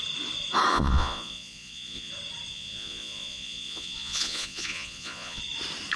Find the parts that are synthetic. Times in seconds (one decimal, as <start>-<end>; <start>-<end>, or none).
0.7-2.1; 2.5-5.4